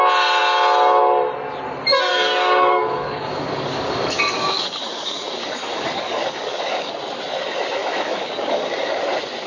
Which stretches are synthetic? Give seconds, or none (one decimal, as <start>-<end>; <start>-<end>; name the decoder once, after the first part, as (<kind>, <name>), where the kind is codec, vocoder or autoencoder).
2.1-6.9 (codec, DAC); 7.8-9.0